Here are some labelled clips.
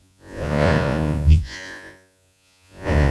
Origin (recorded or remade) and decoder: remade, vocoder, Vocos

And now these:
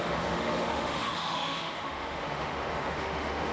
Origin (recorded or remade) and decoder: remade, autoencoder, DAC-VAE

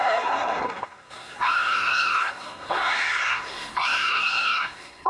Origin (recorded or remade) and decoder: remade, codec, SNAC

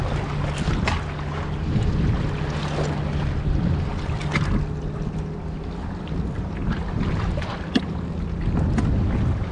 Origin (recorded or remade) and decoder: recorded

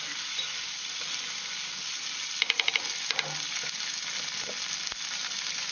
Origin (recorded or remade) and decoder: recorded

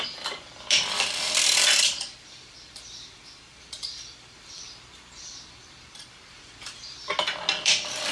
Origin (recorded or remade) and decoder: remade, vocoder, BigVGAN v2